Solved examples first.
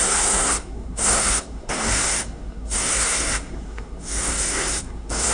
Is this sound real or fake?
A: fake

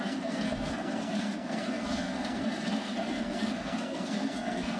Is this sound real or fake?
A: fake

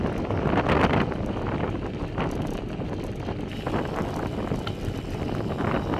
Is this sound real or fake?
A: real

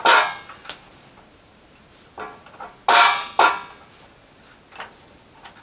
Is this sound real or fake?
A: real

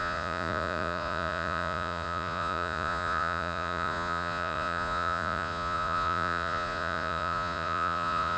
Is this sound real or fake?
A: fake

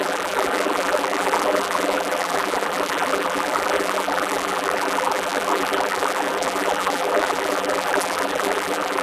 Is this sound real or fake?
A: fake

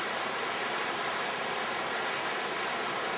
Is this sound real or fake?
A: fake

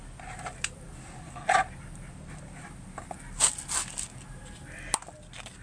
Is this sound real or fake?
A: real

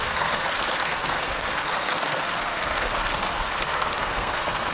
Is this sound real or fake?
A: fake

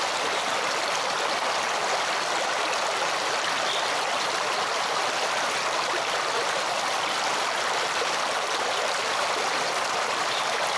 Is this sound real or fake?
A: real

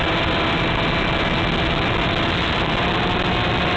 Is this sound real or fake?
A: real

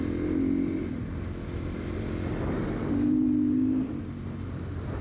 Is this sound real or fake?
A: real